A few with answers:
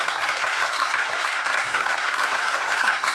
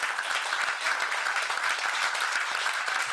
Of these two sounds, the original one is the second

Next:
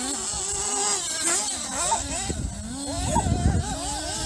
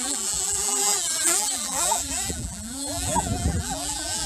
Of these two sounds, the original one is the first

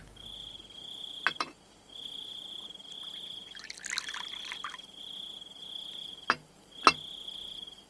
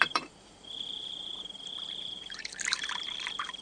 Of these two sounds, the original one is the first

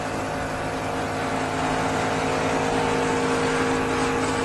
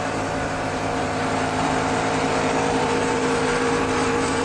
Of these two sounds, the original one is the first